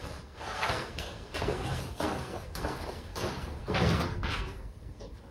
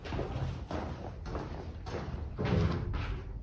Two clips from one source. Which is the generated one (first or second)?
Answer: first